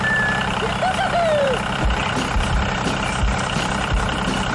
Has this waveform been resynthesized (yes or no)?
yes